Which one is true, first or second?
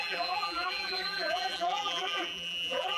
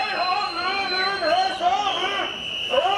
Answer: second